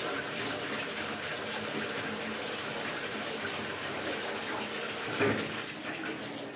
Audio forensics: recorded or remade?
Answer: recorded